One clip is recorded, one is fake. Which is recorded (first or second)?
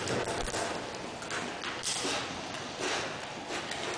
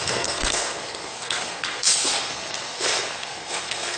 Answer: first